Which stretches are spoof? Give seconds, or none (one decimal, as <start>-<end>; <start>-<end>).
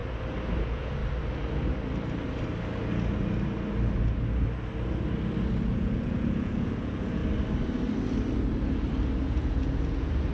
0.6-1.0; 5.6-7.2; 9.2-10.3